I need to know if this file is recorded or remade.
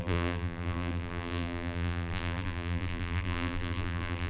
remade